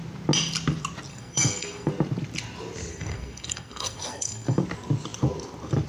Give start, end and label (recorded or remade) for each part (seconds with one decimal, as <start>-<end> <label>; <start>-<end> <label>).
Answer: 0.0-1.1 recorded; 1.1-1.9 remade; 1.9-2.9 recorded; 2.9-4.6 remade; 4.6-5.9 recorded